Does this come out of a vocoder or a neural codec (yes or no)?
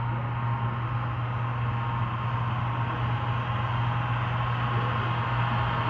no